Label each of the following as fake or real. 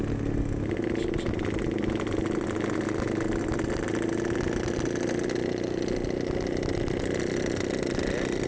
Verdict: real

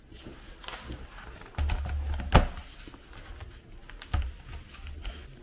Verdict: real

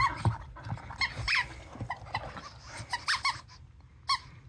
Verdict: real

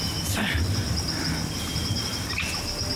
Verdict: real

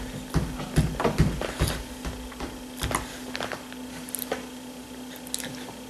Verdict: real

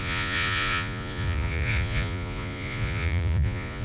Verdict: fake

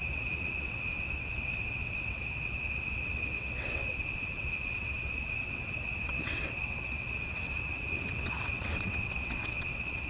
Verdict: fake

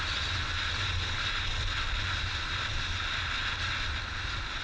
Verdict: real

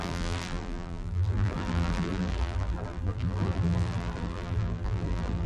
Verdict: fake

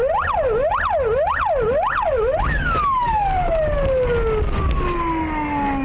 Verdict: real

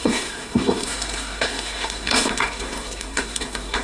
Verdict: fake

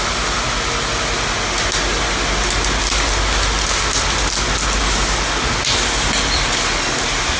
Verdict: real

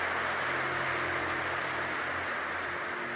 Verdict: real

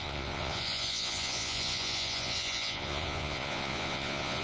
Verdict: fake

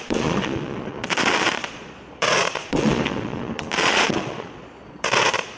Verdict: fake